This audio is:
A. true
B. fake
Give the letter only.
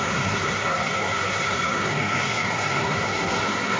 B